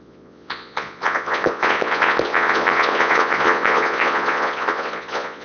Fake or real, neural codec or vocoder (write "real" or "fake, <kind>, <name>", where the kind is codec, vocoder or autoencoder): fake, vocoder, Vocos